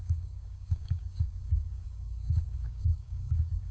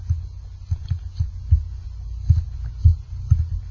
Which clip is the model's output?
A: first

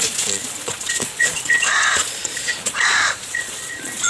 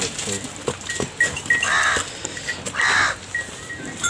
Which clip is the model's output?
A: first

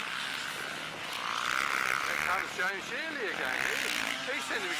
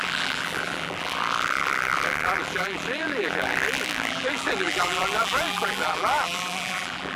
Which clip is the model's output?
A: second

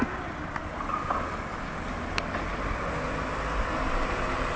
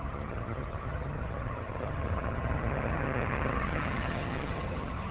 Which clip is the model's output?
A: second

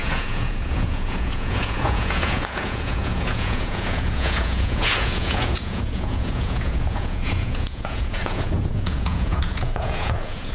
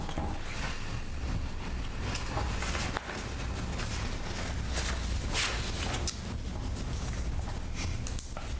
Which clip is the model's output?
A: first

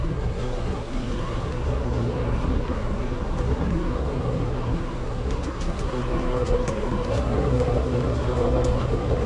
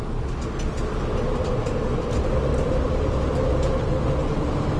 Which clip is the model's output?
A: first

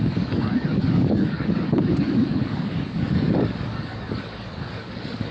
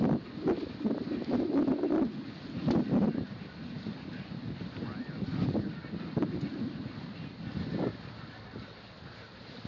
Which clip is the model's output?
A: first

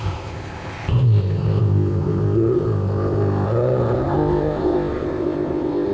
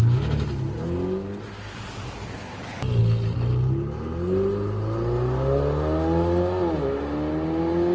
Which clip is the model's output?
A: first